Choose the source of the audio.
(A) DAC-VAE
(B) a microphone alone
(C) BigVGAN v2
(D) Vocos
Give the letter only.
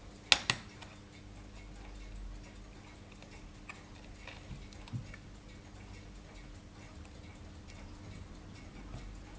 B